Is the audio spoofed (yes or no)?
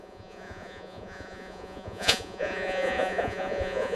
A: yes